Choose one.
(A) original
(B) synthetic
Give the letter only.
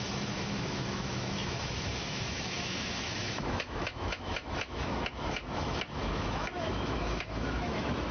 B